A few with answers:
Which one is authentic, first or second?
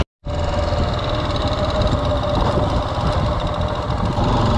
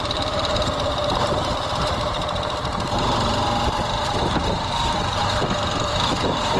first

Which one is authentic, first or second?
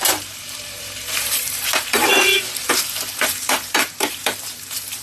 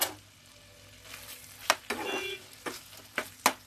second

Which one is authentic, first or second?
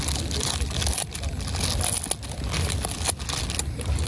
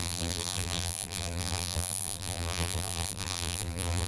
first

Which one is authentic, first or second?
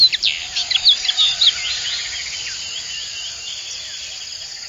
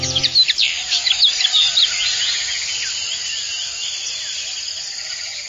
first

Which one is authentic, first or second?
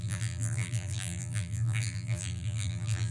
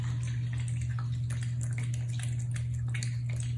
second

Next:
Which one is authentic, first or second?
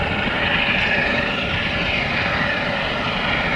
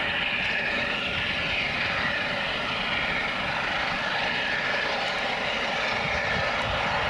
first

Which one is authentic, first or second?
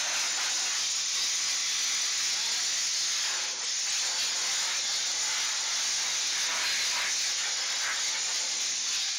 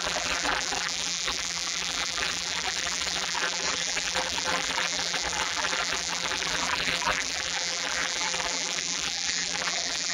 first